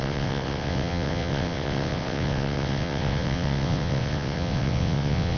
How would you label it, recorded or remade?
remade